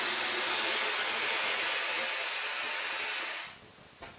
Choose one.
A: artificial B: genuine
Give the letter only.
B